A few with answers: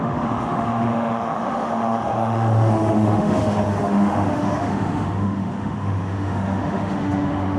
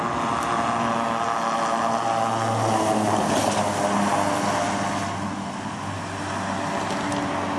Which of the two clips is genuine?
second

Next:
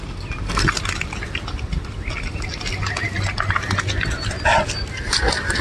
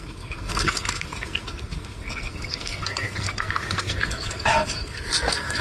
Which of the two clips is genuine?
first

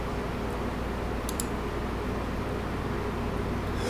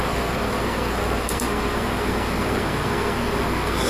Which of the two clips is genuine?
first